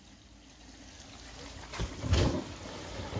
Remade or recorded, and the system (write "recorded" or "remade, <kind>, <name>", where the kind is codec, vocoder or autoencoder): recorded